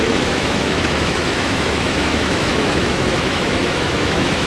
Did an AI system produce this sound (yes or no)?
yes